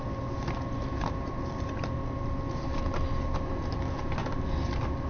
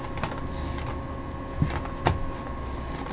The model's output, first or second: first